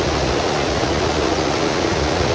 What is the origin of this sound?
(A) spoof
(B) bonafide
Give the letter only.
A